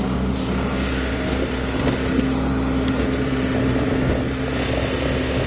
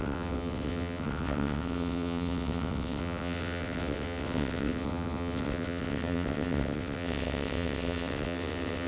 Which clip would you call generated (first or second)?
second